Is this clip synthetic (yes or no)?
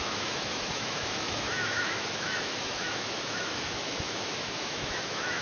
yes